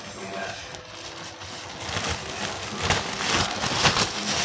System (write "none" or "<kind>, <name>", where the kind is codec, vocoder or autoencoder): none